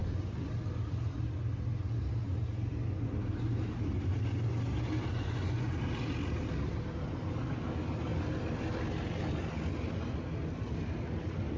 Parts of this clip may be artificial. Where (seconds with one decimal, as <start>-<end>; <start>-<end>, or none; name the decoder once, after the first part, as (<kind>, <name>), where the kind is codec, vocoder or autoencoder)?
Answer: 0.0-0.5 (vocoder, Vocos); 5.1-5.7